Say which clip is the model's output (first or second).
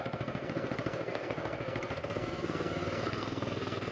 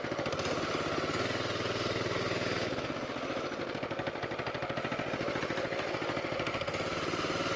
first